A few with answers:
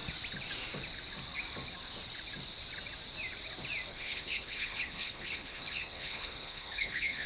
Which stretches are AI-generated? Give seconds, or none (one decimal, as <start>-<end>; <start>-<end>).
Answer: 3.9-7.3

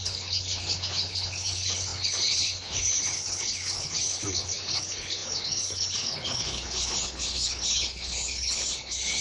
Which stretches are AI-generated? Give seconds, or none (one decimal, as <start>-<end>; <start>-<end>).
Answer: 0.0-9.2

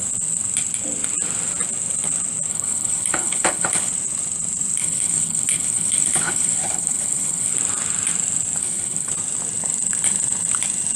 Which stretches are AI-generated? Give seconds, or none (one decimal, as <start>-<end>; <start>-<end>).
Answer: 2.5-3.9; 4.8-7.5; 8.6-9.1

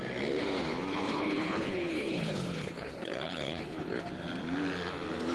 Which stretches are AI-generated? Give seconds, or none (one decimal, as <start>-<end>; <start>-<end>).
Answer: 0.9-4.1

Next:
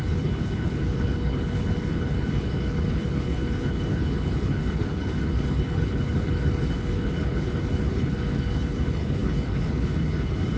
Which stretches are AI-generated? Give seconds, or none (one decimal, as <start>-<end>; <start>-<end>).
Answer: 0.0-10.6

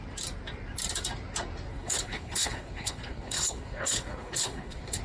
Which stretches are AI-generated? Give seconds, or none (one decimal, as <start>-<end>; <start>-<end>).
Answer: 1.7-5.0

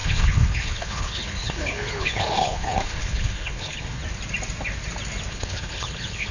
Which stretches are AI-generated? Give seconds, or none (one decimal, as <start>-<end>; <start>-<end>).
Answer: 0.0-4.0; 5.3-6.3